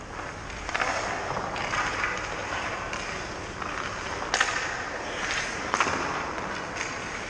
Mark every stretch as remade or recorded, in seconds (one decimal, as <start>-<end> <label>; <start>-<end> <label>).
0.0-7.3 recorded